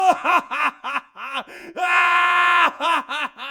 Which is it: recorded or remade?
remade